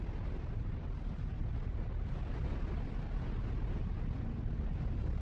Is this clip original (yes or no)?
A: yes